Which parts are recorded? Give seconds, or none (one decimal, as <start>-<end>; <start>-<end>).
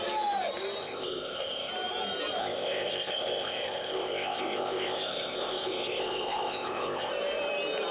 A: 0.0-0.8; 1.7-2.4; 7.1-7.9